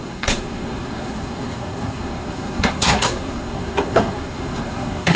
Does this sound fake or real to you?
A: fake